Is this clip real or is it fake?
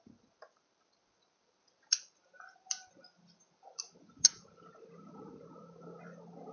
real